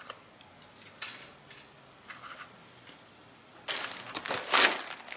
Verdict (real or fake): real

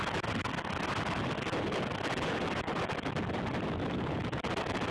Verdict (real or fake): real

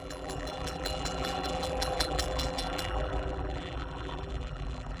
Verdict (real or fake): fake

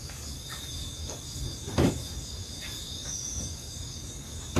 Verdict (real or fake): fake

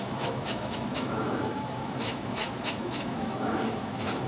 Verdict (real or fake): fake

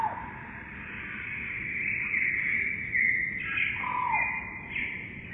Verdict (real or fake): real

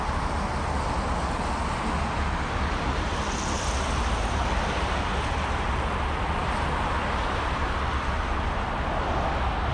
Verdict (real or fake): real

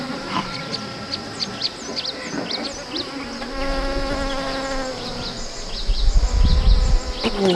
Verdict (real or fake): real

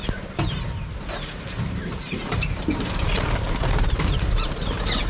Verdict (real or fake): fake